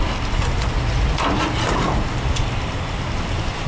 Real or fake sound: real